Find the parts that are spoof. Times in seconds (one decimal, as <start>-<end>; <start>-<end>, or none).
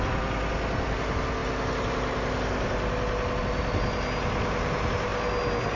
none